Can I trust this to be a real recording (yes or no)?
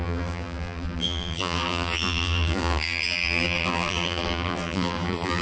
no